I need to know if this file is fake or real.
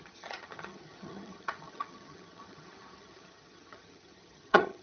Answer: fake